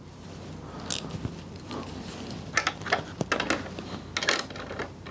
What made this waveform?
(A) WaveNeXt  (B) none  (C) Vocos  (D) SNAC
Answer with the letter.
B